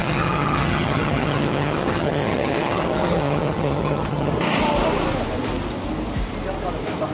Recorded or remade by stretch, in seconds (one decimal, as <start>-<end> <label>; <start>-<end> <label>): 0.0-4.3 remade; 4.3-7.1 recorded